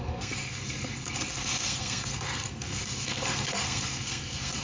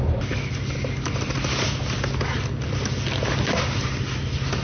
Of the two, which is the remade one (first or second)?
first